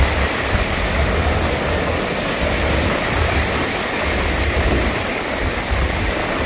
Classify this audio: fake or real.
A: real